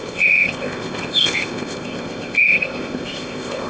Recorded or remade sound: remade